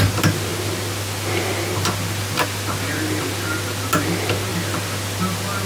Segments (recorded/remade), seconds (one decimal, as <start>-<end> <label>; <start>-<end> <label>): 0.0-5.7 recorded